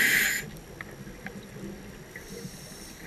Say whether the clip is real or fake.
real